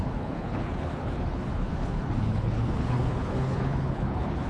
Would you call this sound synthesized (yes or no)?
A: yes